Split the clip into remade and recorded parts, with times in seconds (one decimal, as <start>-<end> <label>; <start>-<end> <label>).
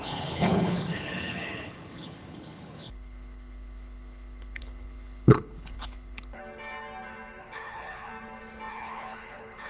0.0-6.4 remade; 6.4-7.4 recorded; 7.4-8.1 remade; 8.1-8.7 recorded; 8.7-9.7 remade